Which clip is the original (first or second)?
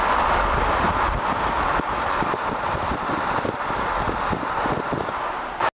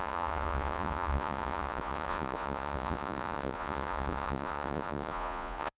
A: first